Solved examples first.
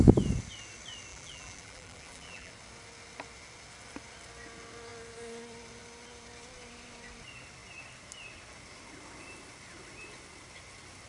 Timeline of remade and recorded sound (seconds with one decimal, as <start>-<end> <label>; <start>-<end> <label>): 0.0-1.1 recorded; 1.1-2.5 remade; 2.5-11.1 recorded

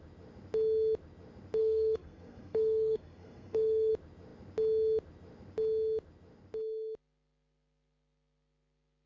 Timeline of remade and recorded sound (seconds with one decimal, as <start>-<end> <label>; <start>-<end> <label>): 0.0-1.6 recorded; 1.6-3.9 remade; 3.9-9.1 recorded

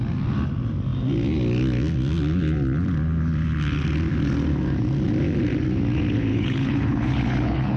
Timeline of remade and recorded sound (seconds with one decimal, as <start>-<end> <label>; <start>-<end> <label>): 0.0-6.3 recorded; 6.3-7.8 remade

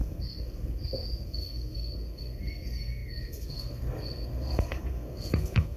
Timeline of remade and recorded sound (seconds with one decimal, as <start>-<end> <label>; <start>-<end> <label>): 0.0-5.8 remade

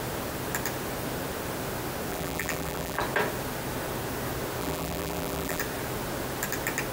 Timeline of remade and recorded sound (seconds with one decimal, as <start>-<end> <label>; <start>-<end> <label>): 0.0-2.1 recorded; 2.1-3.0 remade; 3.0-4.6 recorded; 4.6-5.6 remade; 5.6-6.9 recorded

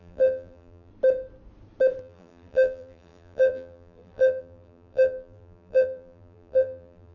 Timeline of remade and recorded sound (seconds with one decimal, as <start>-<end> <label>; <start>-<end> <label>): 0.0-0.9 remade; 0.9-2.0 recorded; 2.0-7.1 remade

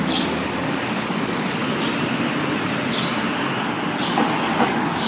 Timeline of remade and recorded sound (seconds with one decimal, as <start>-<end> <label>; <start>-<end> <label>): 0.0-1.6 remade; 1.6-4.6 recorded; 4.6-5.1 remade